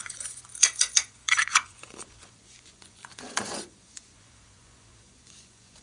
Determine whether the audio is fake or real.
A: fake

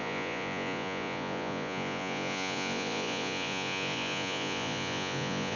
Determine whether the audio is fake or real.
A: fake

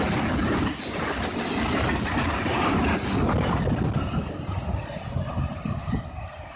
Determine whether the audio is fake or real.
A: real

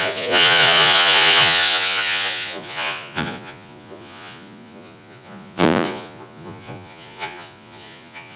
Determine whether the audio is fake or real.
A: fake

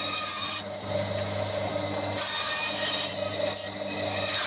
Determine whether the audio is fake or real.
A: real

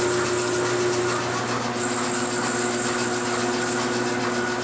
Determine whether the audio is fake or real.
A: real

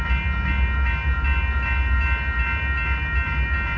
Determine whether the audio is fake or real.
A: real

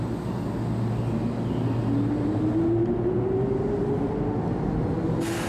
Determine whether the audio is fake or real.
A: real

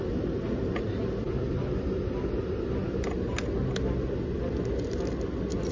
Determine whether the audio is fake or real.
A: real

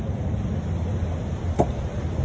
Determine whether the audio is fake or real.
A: real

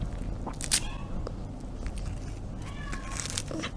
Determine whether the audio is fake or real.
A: real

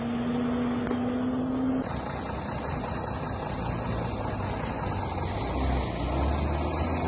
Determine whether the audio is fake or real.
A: real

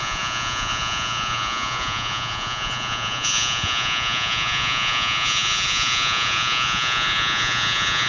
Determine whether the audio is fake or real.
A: fake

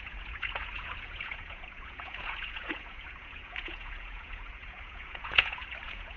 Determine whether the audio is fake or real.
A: fake